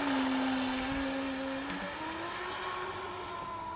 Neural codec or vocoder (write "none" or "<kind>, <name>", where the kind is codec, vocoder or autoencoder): none